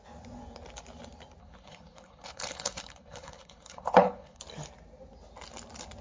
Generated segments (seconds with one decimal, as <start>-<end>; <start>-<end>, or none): 1.4-4.4